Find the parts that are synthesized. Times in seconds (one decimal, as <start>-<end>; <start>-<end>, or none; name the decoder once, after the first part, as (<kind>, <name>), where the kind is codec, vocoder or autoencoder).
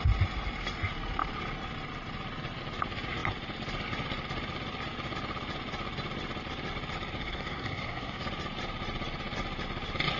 7.2-8.2 (codec, SNAC)